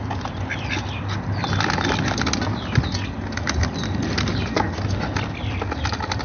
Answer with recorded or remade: recorded